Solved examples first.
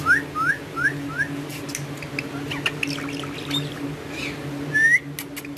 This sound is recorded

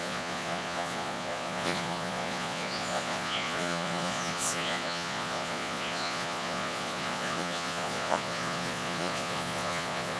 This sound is remade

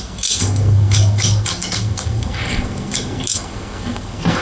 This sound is remade